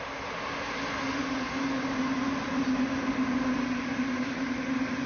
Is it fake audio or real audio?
real